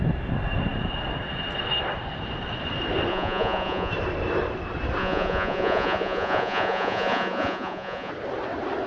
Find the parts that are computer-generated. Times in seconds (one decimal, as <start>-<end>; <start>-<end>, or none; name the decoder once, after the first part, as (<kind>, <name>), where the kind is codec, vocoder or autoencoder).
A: 3.1-3.9 (vocoder, Vocos); 5.0-8.1